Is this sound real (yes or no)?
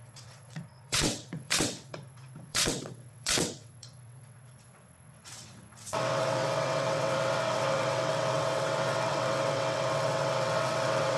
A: no